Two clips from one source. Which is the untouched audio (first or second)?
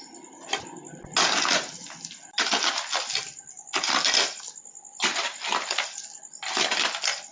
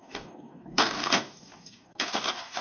first